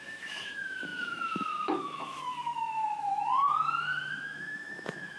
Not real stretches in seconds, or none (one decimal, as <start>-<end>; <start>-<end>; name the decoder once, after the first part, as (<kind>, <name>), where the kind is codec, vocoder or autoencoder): 0.0-3.2 (autoencoder, DAC-VAE); 3.8-5.2

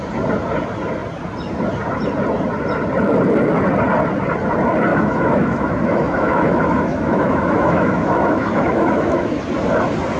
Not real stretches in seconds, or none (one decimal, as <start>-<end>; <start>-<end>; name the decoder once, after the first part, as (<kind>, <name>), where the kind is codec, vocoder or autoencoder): 4.9-9.4 (autoencoder, DAC-VAE)

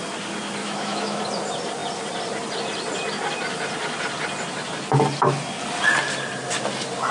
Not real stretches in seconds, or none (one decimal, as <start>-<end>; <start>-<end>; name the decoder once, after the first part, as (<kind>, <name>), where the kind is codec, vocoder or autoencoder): 0.6-1.2 (autoencoder, DAC-VAE)